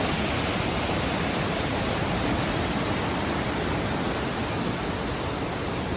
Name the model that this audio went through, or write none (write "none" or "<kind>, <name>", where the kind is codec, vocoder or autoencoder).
none